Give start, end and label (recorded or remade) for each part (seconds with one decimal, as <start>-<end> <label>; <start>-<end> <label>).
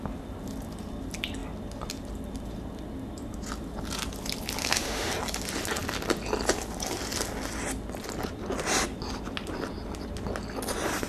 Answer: 0.0-4.6 recorded; 4.6-5.1 remade; 5.1-11.1 recorded